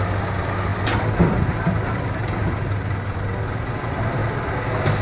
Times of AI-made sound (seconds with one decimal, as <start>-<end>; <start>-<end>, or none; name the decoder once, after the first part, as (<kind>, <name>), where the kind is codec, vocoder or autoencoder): none